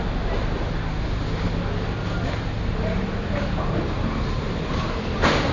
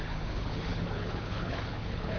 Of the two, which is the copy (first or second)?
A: second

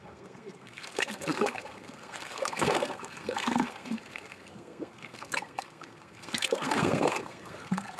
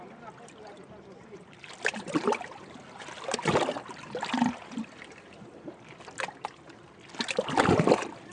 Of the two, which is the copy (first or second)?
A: first